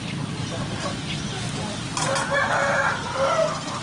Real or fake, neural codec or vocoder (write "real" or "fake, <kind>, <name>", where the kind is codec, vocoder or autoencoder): real